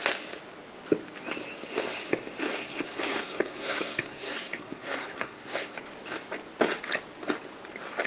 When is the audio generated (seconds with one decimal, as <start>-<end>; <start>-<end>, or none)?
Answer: 2.4-5.8

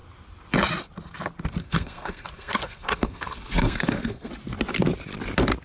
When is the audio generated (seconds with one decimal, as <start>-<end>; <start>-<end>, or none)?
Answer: 1.6-4.3

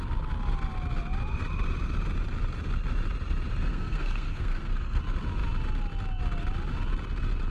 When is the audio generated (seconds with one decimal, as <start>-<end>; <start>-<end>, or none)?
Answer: 3.7-5.0

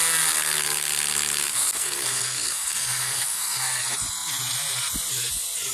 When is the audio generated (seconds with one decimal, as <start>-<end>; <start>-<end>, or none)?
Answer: 1.4-3.8

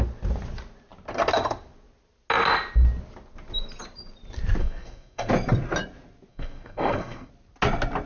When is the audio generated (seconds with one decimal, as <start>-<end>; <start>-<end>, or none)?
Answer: 4.6-5.3; 6.3-7.3

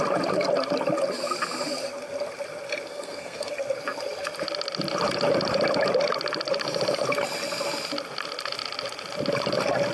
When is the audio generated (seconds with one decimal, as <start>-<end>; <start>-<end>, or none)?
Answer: 2.9-3.5

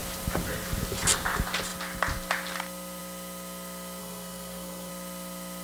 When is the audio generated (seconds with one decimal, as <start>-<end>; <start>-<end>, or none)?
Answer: 4.0-4.9